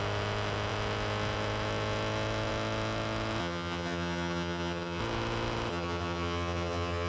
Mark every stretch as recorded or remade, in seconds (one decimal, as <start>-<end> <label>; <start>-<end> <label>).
0.0-3.4 recorded; 3.4-5.0 remade; 5.0-5.7 recorded; 5.7-7.1 remade